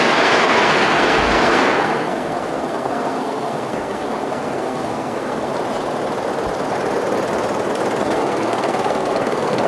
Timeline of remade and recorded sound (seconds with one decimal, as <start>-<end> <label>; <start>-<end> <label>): 0.0-5.5 remade; 5.5-8.0 recorded; 8.0-9.7 remade